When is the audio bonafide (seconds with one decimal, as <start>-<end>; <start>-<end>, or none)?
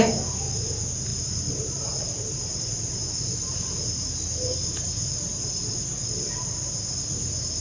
0.0-1.1; 2.6-5.3; 5.9-7.6